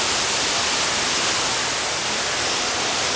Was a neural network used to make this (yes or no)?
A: no